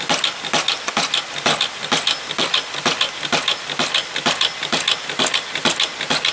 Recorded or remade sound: recorded